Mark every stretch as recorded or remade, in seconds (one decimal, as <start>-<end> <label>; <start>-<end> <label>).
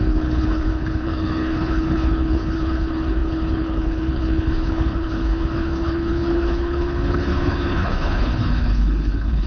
0.0-9.5 remade